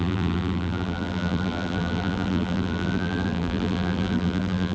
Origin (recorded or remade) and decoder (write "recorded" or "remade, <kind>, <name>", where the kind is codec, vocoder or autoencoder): remade, vocoder, BigVGAN v2